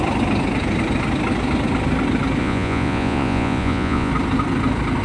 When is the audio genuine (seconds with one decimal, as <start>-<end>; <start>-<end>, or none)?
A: 0.0-2.4; 4.1-5.0